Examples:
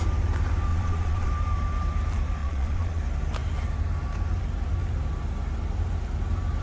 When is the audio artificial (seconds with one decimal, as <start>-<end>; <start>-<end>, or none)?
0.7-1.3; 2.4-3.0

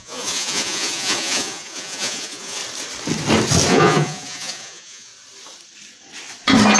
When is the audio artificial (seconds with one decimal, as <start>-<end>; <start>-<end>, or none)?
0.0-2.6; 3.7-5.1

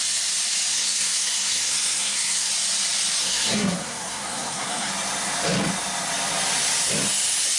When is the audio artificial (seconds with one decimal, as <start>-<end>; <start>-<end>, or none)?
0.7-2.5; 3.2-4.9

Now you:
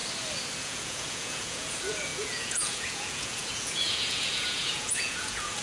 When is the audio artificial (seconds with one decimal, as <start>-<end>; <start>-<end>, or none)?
0.6-5.6